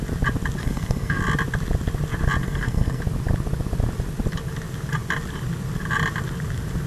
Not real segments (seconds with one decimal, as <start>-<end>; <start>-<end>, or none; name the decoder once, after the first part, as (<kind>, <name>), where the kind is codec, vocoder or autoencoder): 0.6-1.2 (codec, SNAC); 2.4-3.0